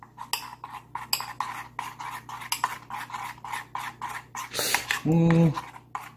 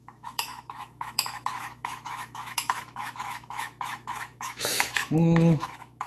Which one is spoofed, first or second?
second